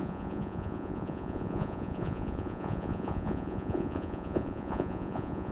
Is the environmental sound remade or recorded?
remade